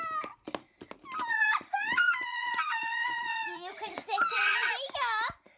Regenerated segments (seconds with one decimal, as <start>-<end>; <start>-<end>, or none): 1.3-4.7